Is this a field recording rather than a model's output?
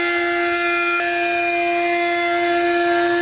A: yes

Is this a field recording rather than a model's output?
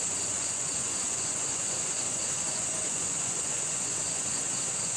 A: no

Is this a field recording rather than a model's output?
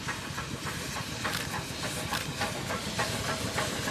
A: yes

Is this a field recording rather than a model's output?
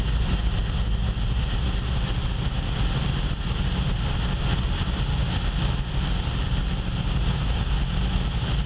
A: yes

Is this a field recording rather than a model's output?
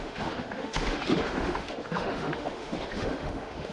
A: no